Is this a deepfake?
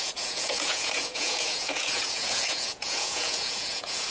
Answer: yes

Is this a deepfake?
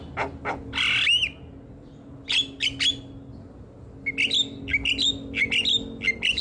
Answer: no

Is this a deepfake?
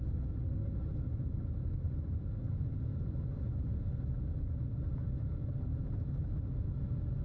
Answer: no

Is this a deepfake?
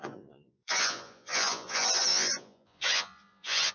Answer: yes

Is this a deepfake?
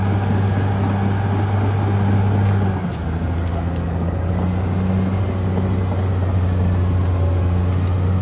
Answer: no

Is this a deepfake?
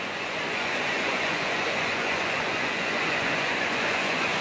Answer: yes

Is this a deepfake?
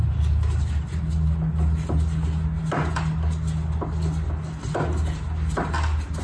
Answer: no